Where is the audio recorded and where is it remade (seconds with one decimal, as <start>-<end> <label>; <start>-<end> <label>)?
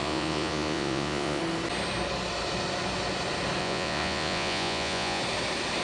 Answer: 0.0-1.4 remade; 1.4-3.6 recorded; 3.6-5.2 remade; 5.2-5.8 recorded